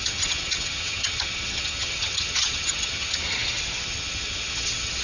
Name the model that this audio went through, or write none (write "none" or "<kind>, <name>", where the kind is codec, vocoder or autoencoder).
vocoder, HiFi-GAN